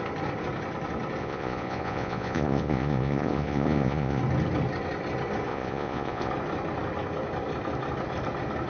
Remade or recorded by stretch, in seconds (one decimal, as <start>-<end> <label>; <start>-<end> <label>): 0.0-1.2 recorded; 1.2-4.2 remade; 4.2-5.5 recorded; 5.5-6.3 remade; 6.3-8.7 recorded